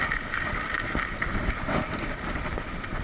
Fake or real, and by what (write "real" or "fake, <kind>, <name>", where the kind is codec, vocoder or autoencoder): real